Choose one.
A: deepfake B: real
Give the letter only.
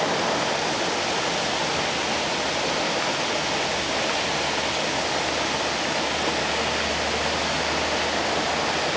B